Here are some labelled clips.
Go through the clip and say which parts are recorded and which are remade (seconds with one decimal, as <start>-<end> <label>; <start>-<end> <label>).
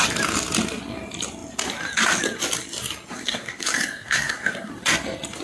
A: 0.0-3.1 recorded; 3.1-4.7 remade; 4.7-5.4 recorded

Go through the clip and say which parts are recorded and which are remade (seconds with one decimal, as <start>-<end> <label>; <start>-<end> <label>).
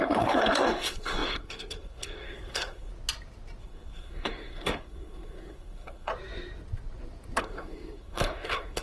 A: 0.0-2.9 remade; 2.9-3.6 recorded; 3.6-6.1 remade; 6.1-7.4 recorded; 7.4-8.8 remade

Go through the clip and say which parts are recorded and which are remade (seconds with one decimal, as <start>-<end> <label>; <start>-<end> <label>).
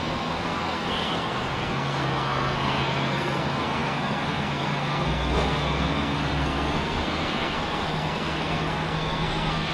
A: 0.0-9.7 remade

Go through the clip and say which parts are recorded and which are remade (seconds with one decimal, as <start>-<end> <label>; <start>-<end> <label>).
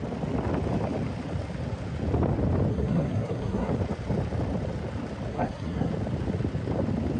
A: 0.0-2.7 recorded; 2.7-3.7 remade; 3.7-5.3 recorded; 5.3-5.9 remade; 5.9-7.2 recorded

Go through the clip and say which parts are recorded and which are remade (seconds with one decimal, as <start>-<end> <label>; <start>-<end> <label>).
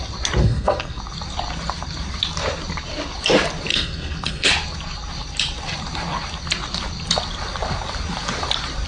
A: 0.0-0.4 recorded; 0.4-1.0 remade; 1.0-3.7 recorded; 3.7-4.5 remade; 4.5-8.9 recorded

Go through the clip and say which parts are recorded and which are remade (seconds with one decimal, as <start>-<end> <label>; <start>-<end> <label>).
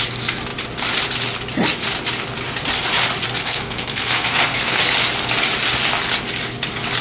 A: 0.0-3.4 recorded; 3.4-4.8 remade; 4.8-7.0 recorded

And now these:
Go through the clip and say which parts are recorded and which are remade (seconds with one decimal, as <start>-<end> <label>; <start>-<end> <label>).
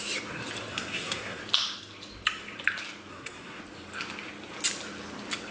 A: 0.0-0.7 recorded; 0.7-1.4 remade; 1.4-3.1 recorded; 3.1-3.6 remade; 3.6-5.5 recorded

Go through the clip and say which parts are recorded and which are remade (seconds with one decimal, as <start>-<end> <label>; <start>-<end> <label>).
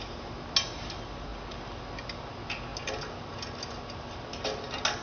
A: 0.0-5.0 recorded